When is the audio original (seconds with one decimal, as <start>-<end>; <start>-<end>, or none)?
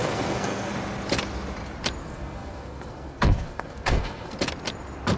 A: 0.7-2.0; 4.4-5.2